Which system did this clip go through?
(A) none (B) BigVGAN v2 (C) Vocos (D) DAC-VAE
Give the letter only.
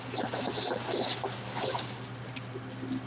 A